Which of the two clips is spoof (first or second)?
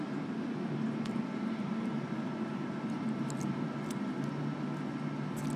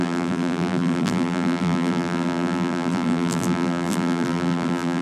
second